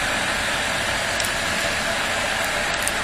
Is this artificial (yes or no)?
no